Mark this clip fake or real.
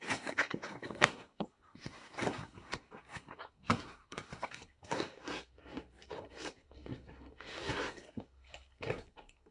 fake